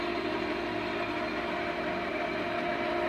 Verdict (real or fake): real